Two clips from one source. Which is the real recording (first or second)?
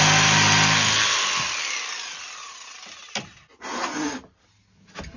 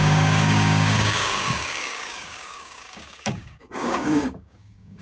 first